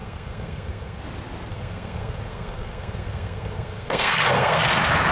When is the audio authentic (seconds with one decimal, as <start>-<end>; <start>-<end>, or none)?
1.0-1.5; 4.6-5.1